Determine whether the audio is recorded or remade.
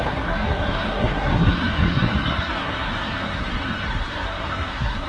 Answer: remade